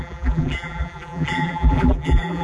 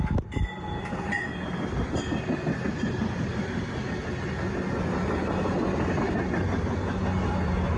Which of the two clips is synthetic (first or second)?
first